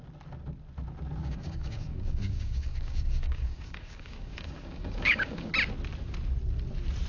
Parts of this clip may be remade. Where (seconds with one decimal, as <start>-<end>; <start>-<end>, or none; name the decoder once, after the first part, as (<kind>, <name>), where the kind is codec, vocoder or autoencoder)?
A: 1.2-5.5 (codec, DAC)

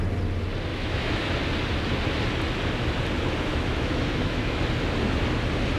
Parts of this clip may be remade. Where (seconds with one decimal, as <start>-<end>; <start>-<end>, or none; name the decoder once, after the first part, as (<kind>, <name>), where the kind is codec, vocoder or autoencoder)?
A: 0.7-1.3 (autoencoder, DAC-VAE); 3.5-4.6

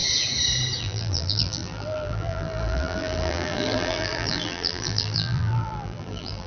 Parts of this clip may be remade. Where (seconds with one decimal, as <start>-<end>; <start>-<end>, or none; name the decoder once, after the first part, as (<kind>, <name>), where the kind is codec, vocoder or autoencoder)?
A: 0.8-6.5 (vocoder, BigVGAN v2)